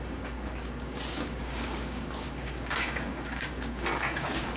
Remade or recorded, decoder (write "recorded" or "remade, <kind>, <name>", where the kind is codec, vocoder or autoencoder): remade, codec, DAC